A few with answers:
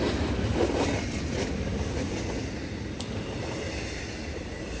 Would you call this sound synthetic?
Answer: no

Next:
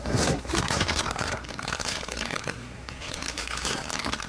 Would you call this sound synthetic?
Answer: yes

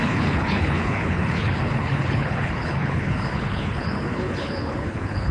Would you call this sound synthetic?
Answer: yes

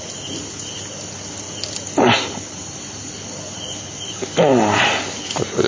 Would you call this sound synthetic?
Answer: no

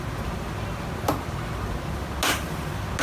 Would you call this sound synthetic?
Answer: no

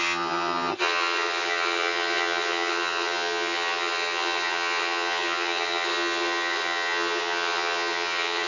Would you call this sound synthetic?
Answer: yes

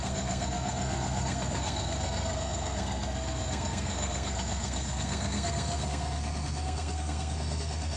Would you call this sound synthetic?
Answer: yes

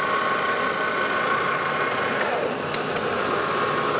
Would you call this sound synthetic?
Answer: no